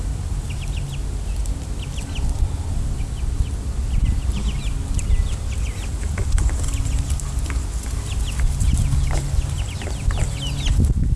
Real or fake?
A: real